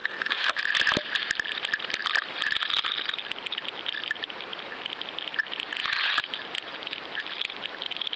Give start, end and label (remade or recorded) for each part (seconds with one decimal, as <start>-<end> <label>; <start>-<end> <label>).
0.0-0.6 remade; 0.6-8.2 recorded